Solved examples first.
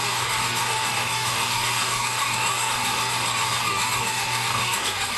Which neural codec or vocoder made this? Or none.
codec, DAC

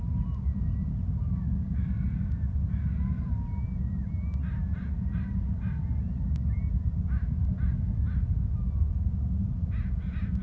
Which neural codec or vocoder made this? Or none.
none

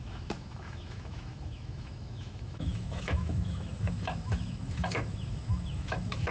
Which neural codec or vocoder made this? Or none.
autoencoder, DAC-VAE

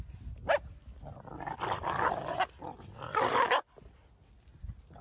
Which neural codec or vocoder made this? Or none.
none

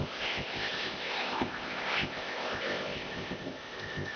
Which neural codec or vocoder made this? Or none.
codec, ZipCodec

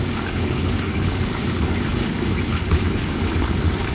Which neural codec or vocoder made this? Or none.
codec, DAC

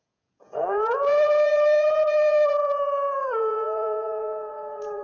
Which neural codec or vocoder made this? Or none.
vocoder, Vocos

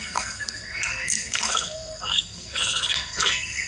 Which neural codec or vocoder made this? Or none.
codec, SNAC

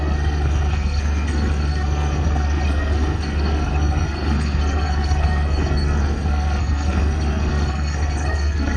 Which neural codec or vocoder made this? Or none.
codec, SNAC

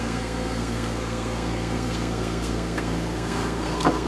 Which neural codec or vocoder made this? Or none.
codec, SNAC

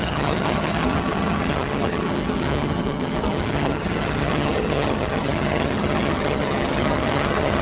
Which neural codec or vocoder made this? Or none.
vocoder, HiFi-GAN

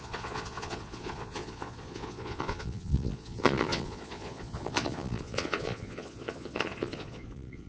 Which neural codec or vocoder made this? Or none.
vocoder, Vocos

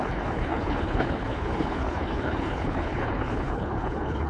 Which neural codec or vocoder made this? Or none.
codec, HILCodec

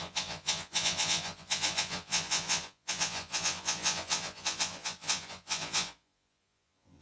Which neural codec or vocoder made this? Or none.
vocoder, Vocos